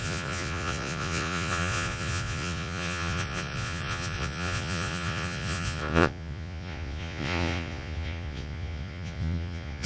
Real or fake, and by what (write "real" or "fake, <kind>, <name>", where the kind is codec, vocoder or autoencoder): fake, vocoder, Vocos